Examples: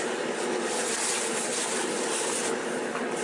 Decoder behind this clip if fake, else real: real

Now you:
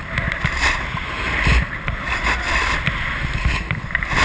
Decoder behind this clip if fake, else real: real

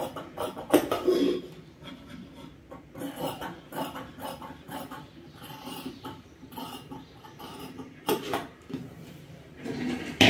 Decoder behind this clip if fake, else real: fake, vocoder, BigVGAN v2